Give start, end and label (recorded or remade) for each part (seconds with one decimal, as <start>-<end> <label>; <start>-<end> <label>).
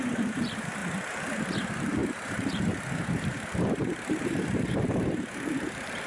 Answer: 0.0-0.8 remade; 0.8-1.5 recorded; 1.5-6.1 remade